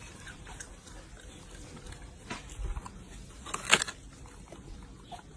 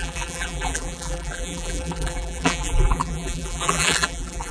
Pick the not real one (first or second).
second